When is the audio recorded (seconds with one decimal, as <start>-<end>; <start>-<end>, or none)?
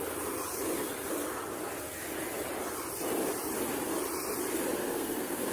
0.0-4.8